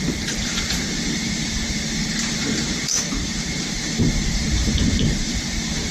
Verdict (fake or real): fake